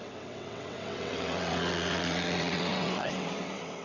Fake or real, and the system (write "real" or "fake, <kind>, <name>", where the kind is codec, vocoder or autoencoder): fake, vocoder, WaveNeXt